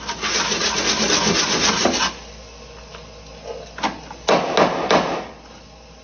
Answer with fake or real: real